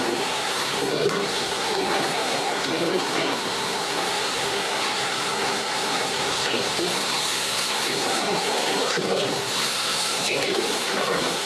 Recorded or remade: remade